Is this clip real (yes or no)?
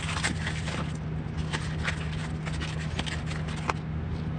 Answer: yes